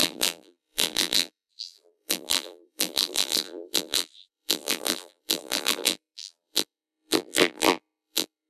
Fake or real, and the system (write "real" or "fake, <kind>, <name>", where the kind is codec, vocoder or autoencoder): fake, vocoder, BigVGAN v2